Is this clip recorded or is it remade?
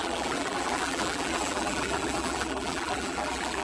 remade